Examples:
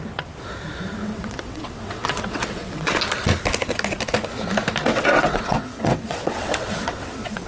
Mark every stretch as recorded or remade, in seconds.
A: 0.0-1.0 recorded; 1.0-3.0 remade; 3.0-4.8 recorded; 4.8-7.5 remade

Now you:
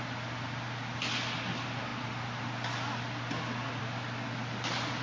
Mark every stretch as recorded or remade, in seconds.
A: 0.0-5.0 recorded

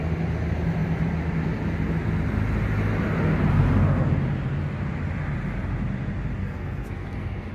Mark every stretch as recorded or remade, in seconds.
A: 0.0-6.4 recorded; 6.4-7.5 remade

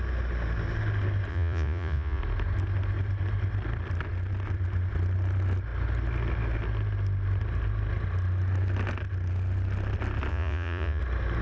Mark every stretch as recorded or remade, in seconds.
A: 0.0-1.3 recorded; 1.3-2.2 remade; 2.2-10.3 recorded; 10.3-11.0 remade; 11.0-11.4 recorded